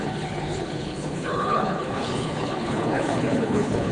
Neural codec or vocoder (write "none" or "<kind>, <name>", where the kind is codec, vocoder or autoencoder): codec, HILCodec